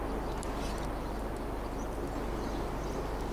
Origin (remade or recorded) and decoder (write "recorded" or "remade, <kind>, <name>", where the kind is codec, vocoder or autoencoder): recorded